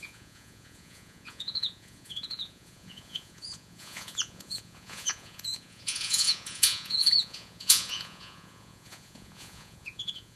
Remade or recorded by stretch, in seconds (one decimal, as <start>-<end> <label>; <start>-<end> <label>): 0.0-10.4 remade